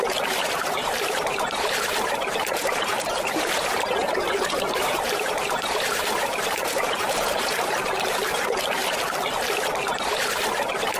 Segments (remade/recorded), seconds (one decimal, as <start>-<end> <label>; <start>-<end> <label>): 0.0-8.8 remade; 8.8-9.9 recorded; 9.9-11.0 remade